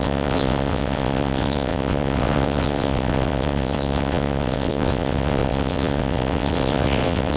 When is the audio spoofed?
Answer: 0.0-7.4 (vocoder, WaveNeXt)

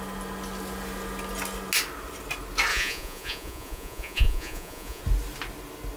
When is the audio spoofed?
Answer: 2.7-5.0 (vocoder, Vocos)

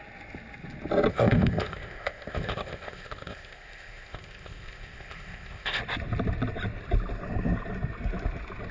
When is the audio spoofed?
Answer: 1.1-5.8 (codec, ZipCodec)

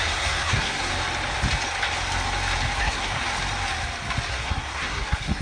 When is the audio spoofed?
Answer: 0.0-0.9 (codec, SNAC); 2.8-3.2; 4.3-5.4

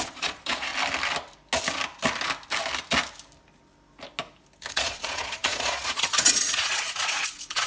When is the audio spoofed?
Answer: 0.0-0.7 (vocoder, Vocos); 4.7-7.7

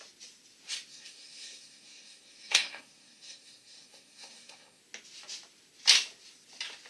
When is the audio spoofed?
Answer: 0.9-4.8 (codec, SNAC)